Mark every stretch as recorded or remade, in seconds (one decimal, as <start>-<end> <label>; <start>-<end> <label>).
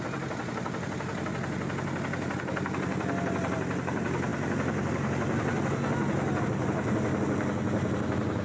0.0-8.4 recorded